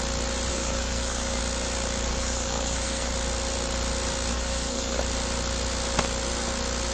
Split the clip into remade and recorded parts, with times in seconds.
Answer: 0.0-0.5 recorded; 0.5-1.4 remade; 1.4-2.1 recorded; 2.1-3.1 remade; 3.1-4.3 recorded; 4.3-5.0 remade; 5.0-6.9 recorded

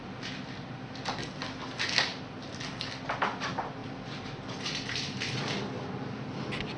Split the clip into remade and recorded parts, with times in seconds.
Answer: 0.0-6.8 recorded

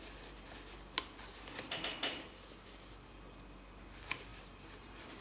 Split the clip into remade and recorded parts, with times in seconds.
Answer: 0.0-5.2 recorded

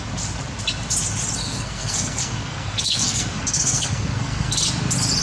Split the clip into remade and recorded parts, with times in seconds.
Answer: 0.0-1.4 recorded; 1.4-4.5 remade; 4.5-5.2 recorded

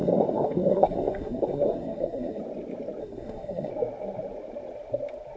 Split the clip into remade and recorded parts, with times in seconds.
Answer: 0.0-2.4 remade; 2.4-3.0 recorded; 3.0-3.7 remade; 3.7-5.4 recorded

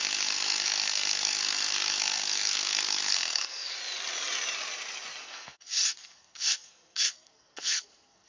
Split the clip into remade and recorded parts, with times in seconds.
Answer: 0.0-3.8 remade; 3.8-5.2 recorded; 5.2-8.3 remade

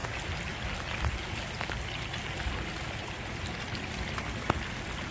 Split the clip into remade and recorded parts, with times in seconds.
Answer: 0.0-5.1 recorded